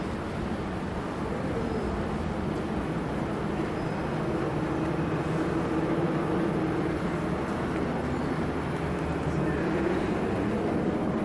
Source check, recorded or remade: recorded